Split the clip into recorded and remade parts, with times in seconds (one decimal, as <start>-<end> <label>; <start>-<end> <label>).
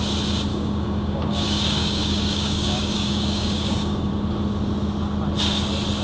0.0-0.5 recorded; 0.5-4.1 remade; 4.1-6.0 recorded